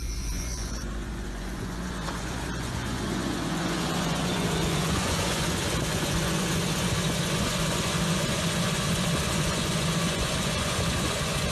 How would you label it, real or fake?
fake